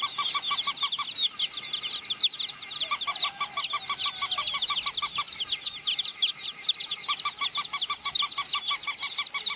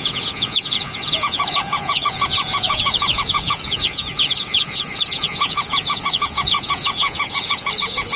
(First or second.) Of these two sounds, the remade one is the second